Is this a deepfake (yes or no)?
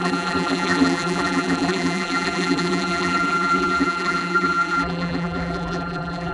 yes